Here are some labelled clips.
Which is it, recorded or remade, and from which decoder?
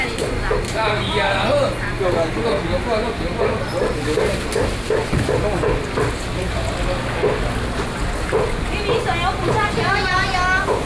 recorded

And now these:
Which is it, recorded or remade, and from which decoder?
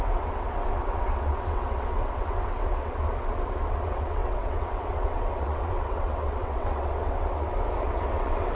remade, vocoder, WaveNeXt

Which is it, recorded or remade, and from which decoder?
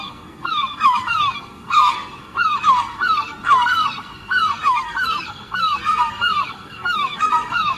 remade, codec, SNAC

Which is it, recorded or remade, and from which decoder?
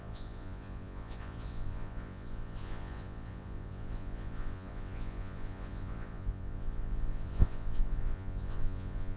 remade, vocoder, Vocos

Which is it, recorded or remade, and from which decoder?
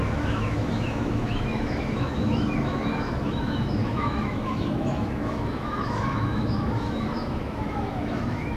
remade, autoencoder, DAC-VAE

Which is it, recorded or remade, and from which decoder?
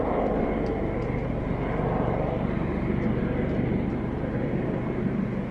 recorded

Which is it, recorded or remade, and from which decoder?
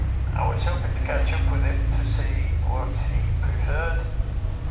recorded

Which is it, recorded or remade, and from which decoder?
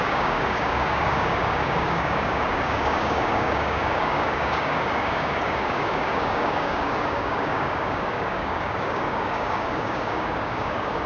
remade, codec, DAC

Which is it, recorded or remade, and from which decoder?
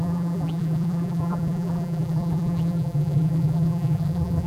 remade, vocoder, BigVGAN v2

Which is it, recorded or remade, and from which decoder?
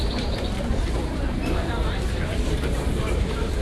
remade, vocoder, BigVGAN v2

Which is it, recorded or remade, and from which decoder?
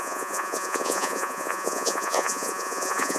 remade, vocoder, Vocos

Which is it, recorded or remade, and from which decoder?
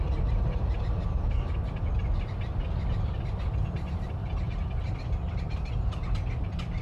recorded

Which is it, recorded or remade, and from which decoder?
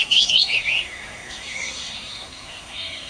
remade, codec, SNAC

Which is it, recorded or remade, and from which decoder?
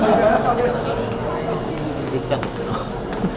recorded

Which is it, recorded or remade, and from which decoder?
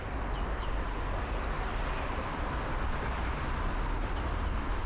recorded